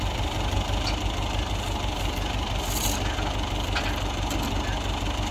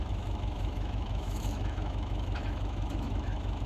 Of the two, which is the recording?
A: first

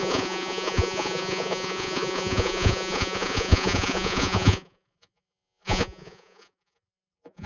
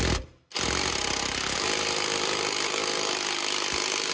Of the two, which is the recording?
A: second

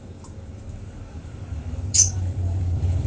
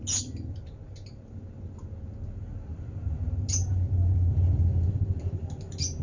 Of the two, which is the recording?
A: second